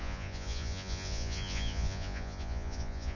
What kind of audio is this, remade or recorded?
remade